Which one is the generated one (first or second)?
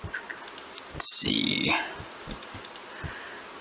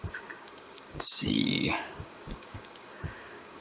second